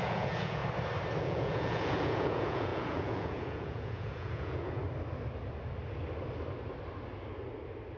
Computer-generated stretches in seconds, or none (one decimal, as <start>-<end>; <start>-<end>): 0.0-0.6; 1.2-4.8